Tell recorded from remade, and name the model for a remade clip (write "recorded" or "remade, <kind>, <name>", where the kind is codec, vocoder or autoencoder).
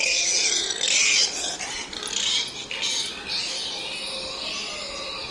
recorded